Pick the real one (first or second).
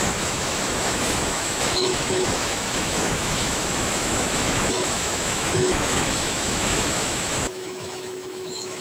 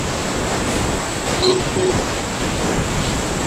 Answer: second